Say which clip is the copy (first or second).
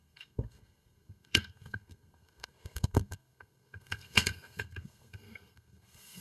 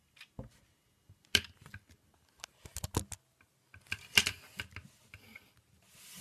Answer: first